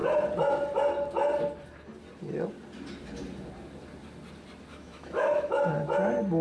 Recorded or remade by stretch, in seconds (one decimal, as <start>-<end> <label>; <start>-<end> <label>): 0.0-4.7 recorded; 4.7-5.7 remade; 5.7-6.4 recorded